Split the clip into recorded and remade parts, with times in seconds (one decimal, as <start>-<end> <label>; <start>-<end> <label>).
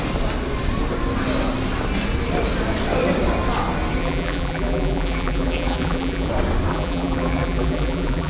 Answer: 0.0-4.0 recorded; 4.0-6.3 remade; 6.3-6.7 recorded; 6.7-8.3 remade